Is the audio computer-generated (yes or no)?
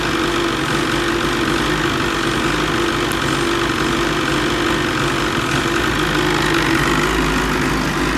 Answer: no